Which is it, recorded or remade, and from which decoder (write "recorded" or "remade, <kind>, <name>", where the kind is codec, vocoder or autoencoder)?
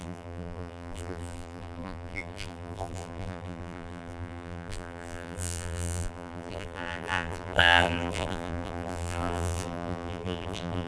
remade, vocoder, BigVGAN v2